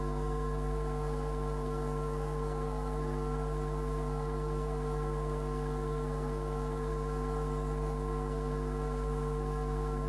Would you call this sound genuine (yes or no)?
no